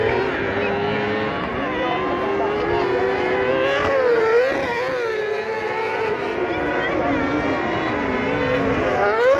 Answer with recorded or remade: recorded